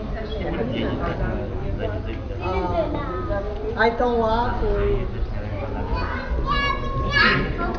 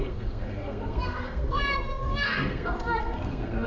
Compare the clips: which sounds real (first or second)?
first